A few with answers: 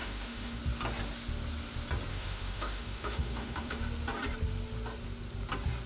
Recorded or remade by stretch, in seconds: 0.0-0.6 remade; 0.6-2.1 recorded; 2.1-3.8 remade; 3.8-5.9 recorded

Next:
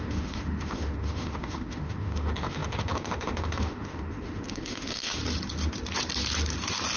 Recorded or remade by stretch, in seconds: 0.0-5.2 remade; 5.2-7.0 recorded

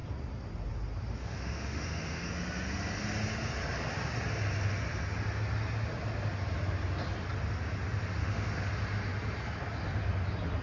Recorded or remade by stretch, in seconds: 0.0-1.2 recorded; 1.2-2.3 remade; 2.3-8.2 recorded; 8.2-8.7 remade; 8.7-10.6 recorded

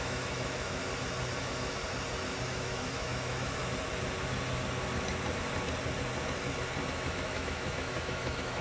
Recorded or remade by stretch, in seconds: 0.0-0.8 remade; 0.8-1.4 recorded; 1.4-1.8 remade; 1.8-2.4 recorded; 2.4-3.6 remade; 3.6-6.9 recorded; 6.9-8.6 remade

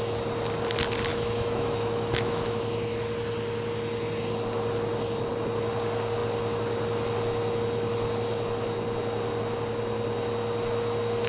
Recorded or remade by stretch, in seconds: 0.0-1.1 recorded; 1.1-2.6 remade; 2.6-11.3 recorded